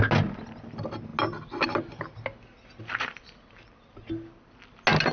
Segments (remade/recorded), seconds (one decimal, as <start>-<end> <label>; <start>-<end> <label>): 0.0-5.1 recorded